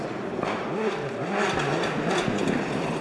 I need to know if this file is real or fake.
real